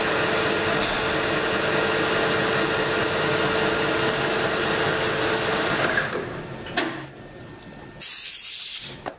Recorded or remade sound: recorded